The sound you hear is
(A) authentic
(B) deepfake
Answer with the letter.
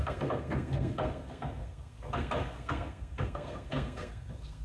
B